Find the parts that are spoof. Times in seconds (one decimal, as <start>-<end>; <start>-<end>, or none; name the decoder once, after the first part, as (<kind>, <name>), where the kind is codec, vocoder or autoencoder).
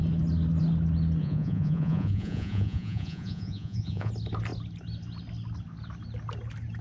1.2-4.1 (vocoder, Vocos)